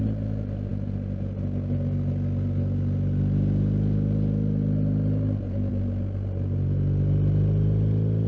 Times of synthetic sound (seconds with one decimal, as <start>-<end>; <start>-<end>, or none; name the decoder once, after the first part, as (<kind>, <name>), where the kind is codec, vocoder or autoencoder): none